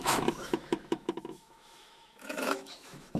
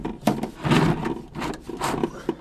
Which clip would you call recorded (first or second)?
second